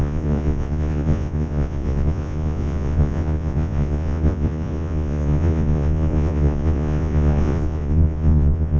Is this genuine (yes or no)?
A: no